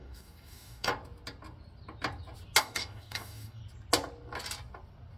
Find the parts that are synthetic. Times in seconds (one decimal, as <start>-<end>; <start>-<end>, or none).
0.0-0.9; 2.6-3.6